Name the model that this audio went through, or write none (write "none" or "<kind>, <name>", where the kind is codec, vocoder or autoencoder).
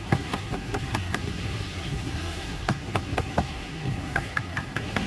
codec, SNAC